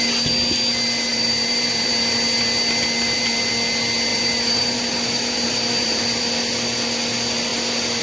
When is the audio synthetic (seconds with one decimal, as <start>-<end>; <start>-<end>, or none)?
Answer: 1.1-1.9; 4.1-6.2